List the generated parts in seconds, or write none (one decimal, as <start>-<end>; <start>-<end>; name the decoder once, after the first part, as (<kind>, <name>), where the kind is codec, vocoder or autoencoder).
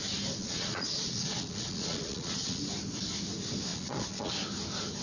0.4-2.6 (vocoder, Vocos); 3.7-4.3